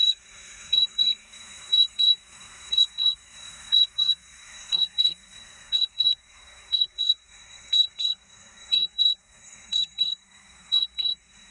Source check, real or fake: fake